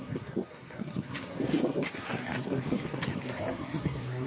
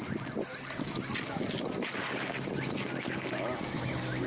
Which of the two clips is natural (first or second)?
second